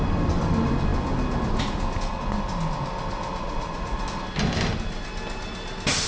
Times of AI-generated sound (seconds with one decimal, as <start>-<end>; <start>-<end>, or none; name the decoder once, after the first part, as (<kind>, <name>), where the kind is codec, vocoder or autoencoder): 3.4-4.0 (vocoder, Vocos)